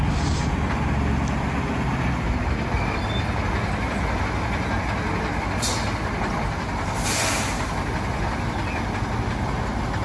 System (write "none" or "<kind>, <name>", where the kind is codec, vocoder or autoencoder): none